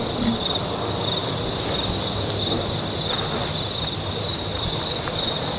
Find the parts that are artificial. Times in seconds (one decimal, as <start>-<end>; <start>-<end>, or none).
none